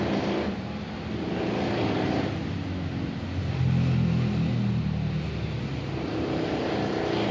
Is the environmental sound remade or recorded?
recorded